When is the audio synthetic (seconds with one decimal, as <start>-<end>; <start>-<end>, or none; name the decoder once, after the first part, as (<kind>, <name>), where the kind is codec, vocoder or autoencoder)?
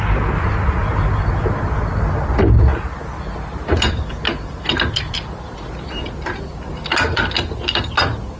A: none